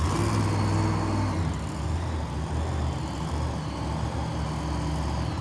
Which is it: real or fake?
real